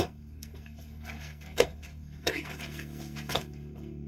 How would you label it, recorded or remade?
remade